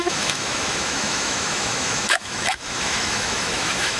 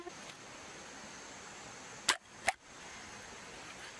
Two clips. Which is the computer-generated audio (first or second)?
first